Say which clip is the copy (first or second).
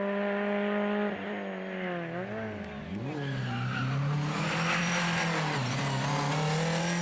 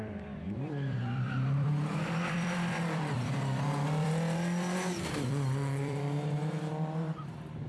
second